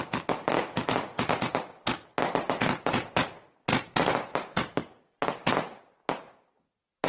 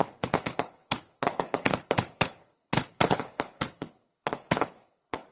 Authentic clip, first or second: first